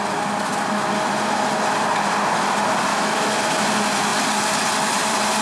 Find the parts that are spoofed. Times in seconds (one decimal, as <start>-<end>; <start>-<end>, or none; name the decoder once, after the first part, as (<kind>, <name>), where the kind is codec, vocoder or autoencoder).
2.9-3.4 (autoencoder, DAC-VAE)